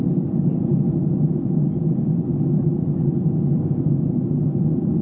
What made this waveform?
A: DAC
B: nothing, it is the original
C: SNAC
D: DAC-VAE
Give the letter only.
B